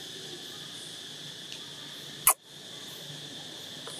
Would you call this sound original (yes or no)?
yes